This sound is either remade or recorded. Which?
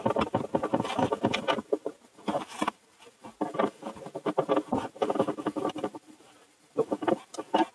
remade